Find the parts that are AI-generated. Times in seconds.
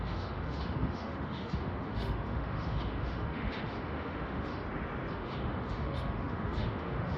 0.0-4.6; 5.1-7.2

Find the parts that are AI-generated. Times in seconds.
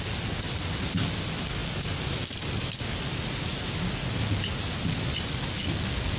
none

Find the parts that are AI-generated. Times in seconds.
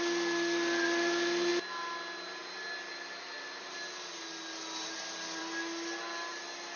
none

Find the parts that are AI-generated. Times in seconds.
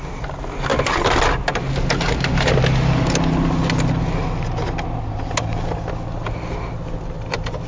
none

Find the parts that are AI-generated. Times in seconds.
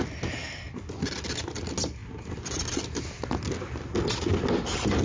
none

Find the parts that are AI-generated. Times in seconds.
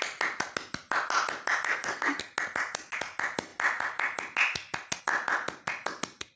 1.7-2.2